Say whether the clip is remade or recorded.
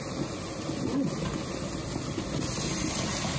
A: recorded